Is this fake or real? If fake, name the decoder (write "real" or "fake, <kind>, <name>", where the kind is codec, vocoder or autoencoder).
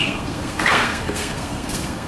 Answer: fake, codec, SNAC